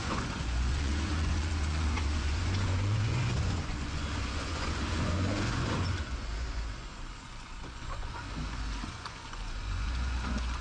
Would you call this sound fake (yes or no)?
yes